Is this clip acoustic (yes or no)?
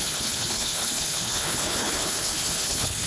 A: no